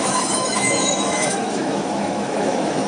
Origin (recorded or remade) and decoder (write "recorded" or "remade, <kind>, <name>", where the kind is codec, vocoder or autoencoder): remade, autoencoder, DAC-VAE